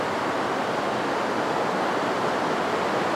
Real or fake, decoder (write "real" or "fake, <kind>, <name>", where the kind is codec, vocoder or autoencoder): real